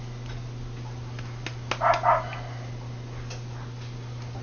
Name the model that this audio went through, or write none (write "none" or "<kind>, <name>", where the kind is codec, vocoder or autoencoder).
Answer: none